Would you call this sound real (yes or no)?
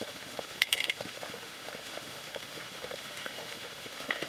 no